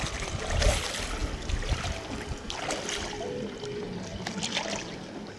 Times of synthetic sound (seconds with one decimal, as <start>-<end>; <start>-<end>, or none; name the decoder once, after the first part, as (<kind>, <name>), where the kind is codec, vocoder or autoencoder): none